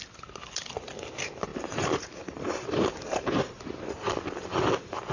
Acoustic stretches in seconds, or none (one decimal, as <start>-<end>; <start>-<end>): 0.0-1.5; 4.1-4.5